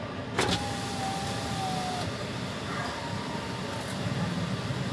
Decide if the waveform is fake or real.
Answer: real